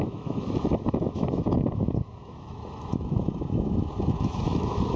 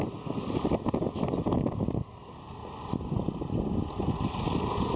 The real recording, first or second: second